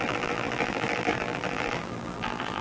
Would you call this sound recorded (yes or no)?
no